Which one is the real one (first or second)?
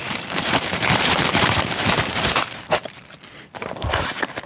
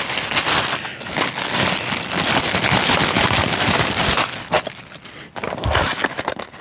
second